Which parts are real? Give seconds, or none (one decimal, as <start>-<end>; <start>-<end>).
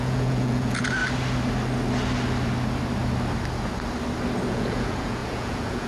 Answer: 1.0-4.5